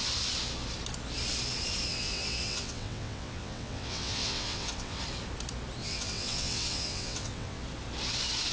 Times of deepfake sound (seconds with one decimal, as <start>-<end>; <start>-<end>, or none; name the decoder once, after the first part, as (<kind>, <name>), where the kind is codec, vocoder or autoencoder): 1.9-5.0 (vocoder, WaveNeXt); 5.8-7.6